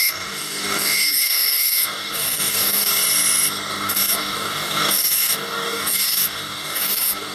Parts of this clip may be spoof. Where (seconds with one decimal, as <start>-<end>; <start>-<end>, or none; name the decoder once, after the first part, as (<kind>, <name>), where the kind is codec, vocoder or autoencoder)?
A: 0.0-2.9 (codec, DAC); 3.7-7.3